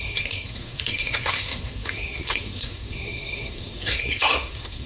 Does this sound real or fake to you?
fake